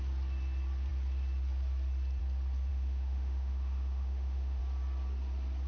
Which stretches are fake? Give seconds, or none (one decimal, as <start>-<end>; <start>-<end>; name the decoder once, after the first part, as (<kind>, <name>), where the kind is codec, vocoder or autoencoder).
2.7-4.6 (autoencoder, DAC-VAE)